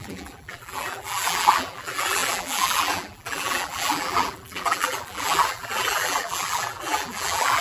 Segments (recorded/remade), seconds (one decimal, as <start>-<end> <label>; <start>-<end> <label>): 0.0-7.6 remade